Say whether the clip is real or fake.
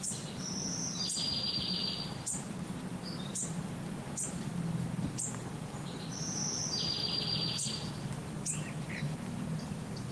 fake